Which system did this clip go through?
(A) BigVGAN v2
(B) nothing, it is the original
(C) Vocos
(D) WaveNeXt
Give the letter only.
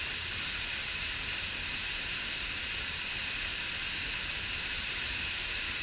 A